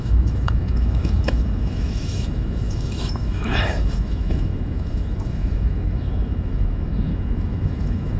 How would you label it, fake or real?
fake